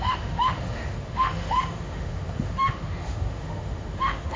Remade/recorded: remade